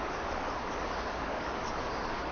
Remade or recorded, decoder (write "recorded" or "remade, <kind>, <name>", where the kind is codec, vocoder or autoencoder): remade, codec, DAC